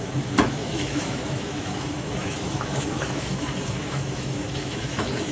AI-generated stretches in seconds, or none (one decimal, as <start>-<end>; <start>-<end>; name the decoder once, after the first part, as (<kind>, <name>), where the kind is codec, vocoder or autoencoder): 0.0-5.3 (autoencoder, DAC-VAE)